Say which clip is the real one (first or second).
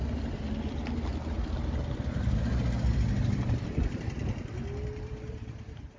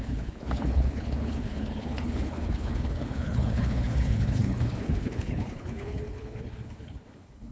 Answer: first